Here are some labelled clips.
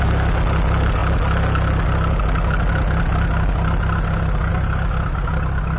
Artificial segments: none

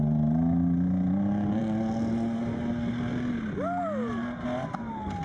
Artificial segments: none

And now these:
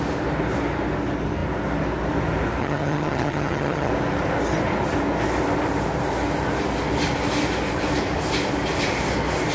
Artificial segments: 2.6-3.9 (vocoder, HiFi-GAN)

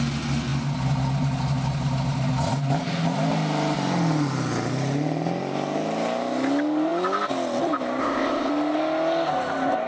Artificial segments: 8.0-8.5 (codec, ZipCodec)